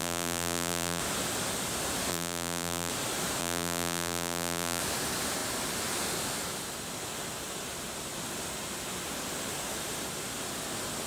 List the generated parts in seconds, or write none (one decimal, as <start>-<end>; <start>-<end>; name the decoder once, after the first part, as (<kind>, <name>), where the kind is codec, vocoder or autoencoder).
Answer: 0.0-1.0 (vocoder, BigVGAN v2); 2.1-2.9; 3.4-4.8

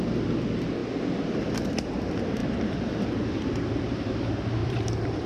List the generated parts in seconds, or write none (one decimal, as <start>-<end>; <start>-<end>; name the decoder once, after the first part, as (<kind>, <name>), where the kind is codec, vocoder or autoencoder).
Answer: 2.4-3.8 (vocoder, BigVGAN v2); 4.6-5.3